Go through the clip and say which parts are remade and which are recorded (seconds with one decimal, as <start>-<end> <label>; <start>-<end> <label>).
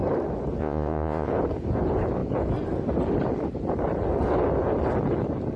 0.0-0.6 recorded; 0.6-1.3 remade; 1.3-5.6 recorded